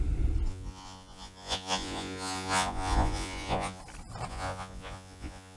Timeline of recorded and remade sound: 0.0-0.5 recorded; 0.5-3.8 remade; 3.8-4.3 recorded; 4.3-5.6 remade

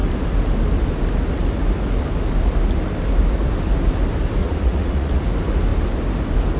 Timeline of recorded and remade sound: 0.0-4.4 recorded; 4.4-5.2 remade; 5.2-6.6 recorded

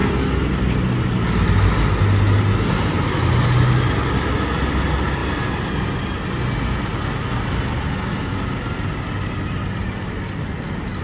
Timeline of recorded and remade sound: 0.0-11.0 recorded

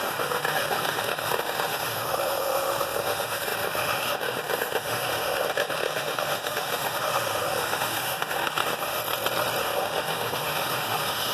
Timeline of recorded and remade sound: 0.0-9.0 remade; 9.0-9.6 recorded; 9.6-11.3 remade

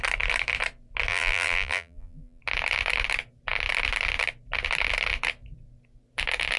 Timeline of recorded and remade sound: 0.0-1.1 recorded; 1.1-2.4 remade; 2.4-6.6 recorded

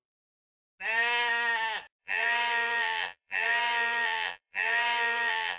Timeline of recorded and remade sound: 0.0-2.0 recorded; 2.0-5.6 remade

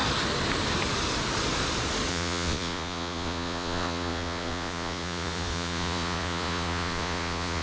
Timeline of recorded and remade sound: 0.0-2.1 recorded; 2.1-7.6 remade